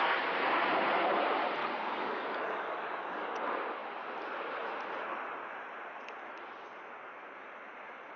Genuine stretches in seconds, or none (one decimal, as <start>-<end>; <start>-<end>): 0.0-1.6; 3.3-8.2